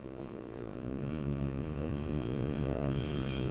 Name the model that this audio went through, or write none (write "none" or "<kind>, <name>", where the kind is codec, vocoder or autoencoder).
vocoder, Vocos